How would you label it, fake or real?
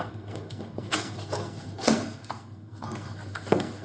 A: fake